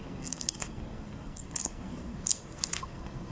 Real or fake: fake